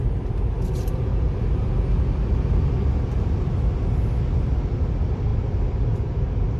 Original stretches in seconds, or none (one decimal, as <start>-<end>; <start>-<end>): 0.0-6.6